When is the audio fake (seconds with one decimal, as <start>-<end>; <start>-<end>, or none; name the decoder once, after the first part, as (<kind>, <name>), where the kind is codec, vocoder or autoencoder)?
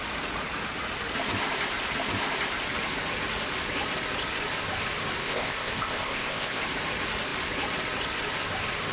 5.2-6.6 (codec, ZipCodec)